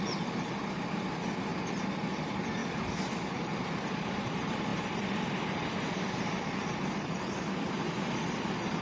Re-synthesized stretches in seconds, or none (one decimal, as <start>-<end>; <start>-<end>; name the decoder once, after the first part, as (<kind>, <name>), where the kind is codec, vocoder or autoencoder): 2.6-3.9 (vocoder, BigVGAN v2); 4.7-7.5